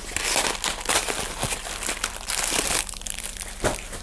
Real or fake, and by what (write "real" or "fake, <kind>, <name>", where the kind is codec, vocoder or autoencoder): real